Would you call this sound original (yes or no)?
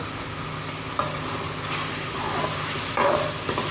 yes